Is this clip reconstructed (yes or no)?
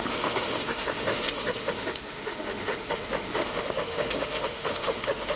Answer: yes